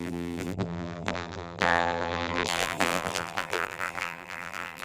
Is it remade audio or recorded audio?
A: remade